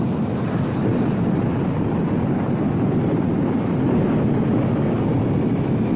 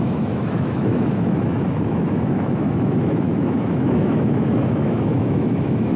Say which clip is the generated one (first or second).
second